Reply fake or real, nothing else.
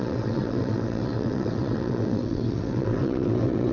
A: fake